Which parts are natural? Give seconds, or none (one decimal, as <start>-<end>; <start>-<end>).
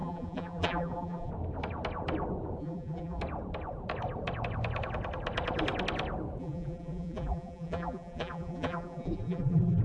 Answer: 1.3-2.6; 3.2-6.4